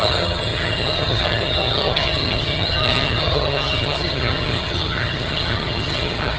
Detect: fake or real fake